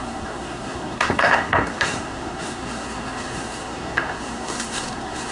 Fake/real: fake